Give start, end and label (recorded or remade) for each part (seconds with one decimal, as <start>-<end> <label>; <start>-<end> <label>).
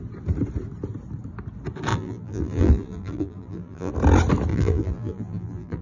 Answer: 0.0-1.9 recorded; 1.9-3.9 remade; 3.9-4.5 recorded; 4.5-5.8 remade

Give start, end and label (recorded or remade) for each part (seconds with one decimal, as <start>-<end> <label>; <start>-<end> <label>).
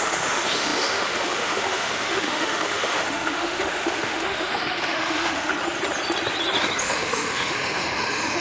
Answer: 0.0-5.5 remade; 5.5-6.8 recorded; 6.8-8.4 remade